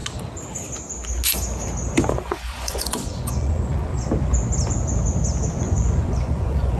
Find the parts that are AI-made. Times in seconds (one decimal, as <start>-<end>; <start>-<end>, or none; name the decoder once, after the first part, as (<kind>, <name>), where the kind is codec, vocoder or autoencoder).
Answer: 2.1-3.9 (vocoder, Vocos); 5.6-6.8

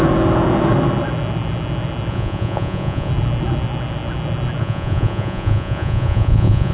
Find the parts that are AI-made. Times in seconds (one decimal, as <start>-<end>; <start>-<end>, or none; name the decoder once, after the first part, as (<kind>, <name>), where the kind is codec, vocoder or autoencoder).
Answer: 2.1-3.1 (vocoder, Vocos); 4.6-6.7